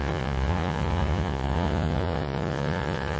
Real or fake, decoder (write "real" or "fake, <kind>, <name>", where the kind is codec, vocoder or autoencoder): fake, vocoder, Vocos